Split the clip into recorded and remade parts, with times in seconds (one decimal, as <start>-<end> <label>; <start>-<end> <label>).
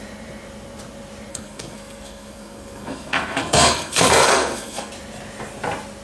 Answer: 0.0-1.3 recorded; 1.3-4.9 remade; 4.9-6.0 recorded